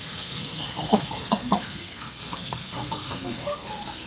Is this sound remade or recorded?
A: remade